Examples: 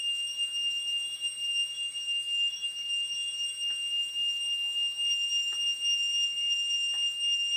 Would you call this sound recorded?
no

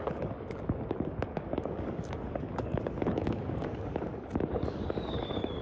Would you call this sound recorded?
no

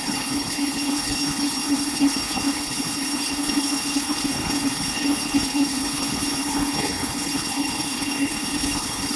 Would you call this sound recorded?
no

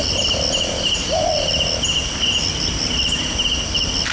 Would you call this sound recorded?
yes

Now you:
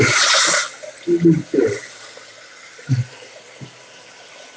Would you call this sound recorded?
yes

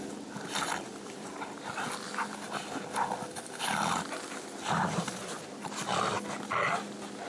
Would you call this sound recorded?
yes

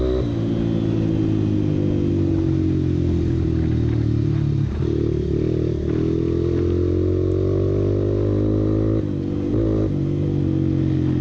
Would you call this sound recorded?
yes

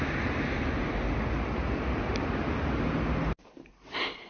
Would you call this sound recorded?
yes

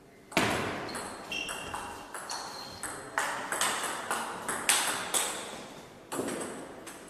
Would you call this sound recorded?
yes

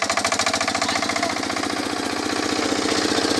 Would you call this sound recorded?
yes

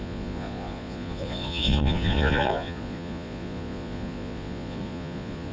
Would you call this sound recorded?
no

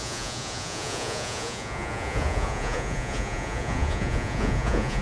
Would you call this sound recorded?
no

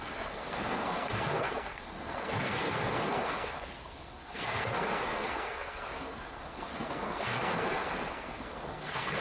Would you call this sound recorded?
no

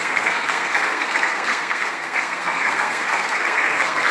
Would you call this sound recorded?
no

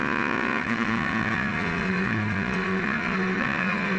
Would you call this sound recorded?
no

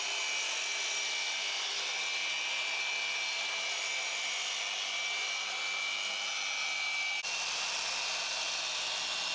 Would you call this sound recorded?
yes